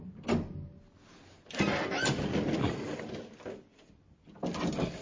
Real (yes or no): yes